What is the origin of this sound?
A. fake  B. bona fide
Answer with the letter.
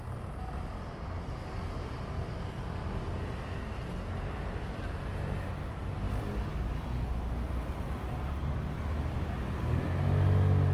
B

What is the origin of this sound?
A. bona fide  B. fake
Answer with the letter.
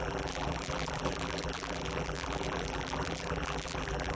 B